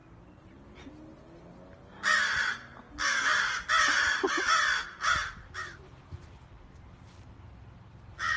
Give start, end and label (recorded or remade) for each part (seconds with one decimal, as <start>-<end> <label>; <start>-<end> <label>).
0.0-8.4 recorded